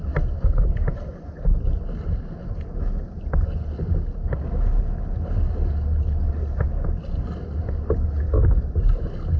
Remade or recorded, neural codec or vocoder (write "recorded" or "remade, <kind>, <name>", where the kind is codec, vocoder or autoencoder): recorded